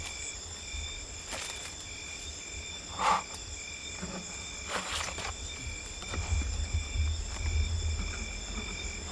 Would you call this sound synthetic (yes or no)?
no